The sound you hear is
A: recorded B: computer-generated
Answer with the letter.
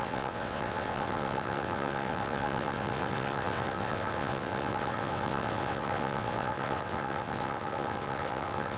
B